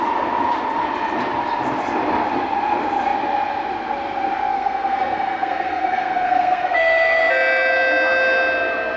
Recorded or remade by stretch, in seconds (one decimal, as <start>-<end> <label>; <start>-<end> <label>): 0.0-4.5 recorded; 4.5-7.2 remade; 7.2-9.0 recorded

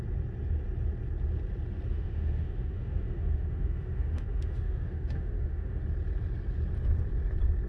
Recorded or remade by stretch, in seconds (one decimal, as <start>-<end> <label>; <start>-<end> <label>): 0.0-1.9 recorded; 1.9-5.8 remade; 5.8-7.7 recorded

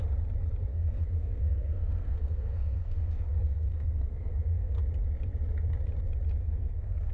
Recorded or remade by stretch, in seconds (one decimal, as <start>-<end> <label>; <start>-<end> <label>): 0.0-0.7 recorded; 0.7-4.8 remade; 4.8-6.4 recorded; 6.4-7.1 remade